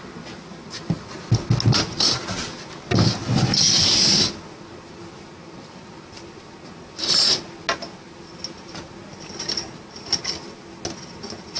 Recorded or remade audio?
recorded